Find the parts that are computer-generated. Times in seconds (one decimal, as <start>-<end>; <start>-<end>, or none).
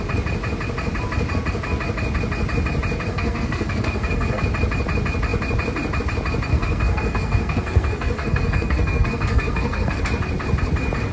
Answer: 3.1-4.4; 6.5-10.0